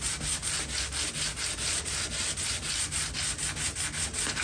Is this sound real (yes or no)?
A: yes